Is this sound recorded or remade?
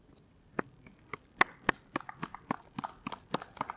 recorded